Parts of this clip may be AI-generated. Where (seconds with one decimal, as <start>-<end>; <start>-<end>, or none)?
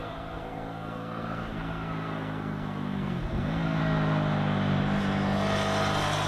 0.0-3.8